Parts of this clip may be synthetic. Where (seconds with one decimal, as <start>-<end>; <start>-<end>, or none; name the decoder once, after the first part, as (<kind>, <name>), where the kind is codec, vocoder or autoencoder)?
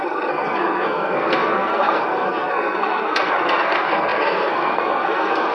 0.0-5.5 (codec, SNAC)